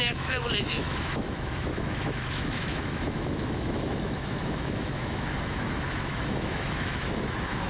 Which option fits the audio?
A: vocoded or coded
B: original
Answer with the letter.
A